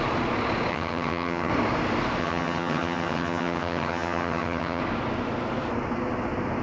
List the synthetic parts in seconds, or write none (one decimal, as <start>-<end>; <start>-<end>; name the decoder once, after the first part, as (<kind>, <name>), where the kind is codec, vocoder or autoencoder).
0.7-1.5 (vocoder, HiFi-GAN); 2.2-4.8